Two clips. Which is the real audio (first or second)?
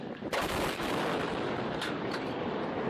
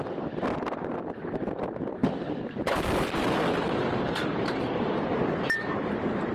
first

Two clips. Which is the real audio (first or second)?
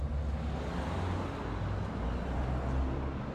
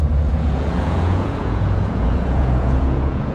first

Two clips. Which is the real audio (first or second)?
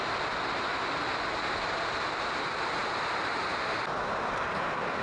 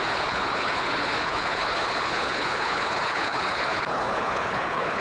first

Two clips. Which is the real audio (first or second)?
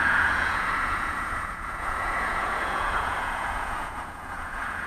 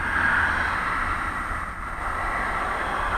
second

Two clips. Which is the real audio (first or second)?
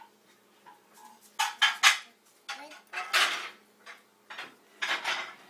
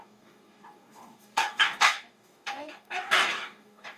first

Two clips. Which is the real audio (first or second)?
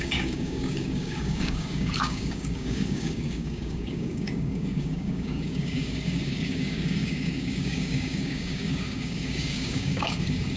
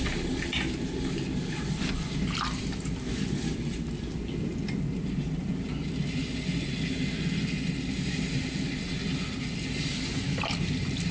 second